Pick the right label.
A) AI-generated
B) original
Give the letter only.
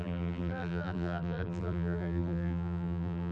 A